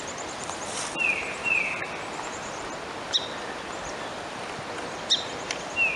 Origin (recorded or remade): remade